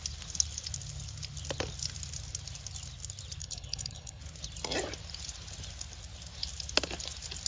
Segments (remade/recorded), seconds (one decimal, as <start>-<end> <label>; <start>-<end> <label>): 0.0-3.4 recorded; 3.4-4.2 remade; 4.2-7.5 recorded